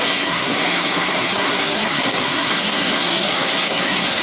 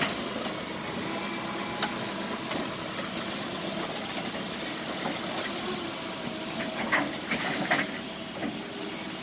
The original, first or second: second